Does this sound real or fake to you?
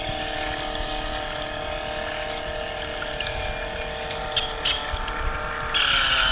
real